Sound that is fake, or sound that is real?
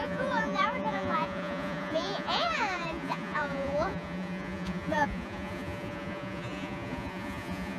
fake